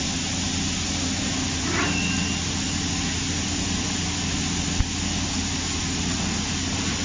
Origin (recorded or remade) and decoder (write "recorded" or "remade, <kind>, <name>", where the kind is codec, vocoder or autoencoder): recorded